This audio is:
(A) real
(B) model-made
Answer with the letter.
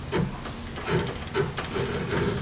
A